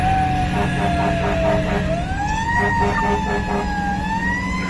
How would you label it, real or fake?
real